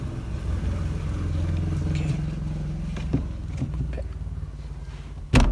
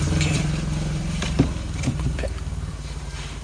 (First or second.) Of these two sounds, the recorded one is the first